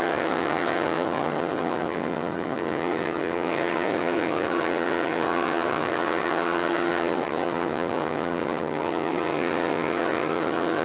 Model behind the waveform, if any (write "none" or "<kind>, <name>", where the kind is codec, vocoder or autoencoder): vocoder, HiFi-GAN